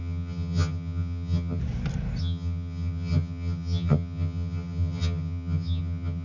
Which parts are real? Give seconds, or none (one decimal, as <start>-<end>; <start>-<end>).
1.6-2.2